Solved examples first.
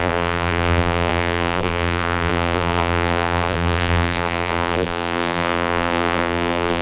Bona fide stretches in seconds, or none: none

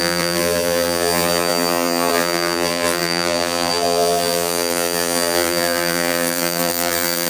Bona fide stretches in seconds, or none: none

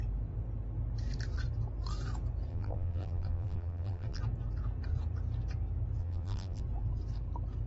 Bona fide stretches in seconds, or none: 0.0-2.5; 4.2-6.0; 6.6-7.7

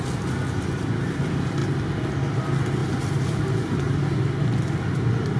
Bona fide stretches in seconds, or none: 0.0-2.8; 3.4-5.4

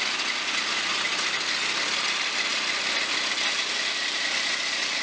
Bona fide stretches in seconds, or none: 0.0-2.5; 4.4-5.0

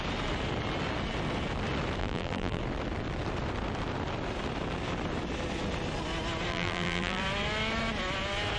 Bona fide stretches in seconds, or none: 0.0-2.0; 2.6-6.5; 7.2-8.6

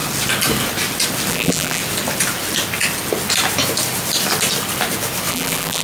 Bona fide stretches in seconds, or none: 0.0-1.3; 1.8-5.3